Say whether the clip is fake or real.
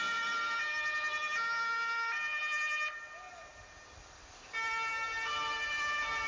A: real